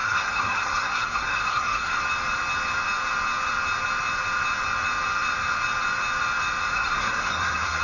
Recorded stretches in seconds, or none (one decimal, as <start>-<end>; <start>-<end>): 2.0-6.7